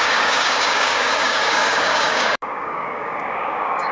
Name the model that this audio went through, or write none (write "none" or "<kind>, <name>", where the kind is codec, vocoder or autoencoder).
codec, DAC